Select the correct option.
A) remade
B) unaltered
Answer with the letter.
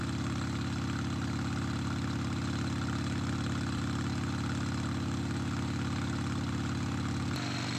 B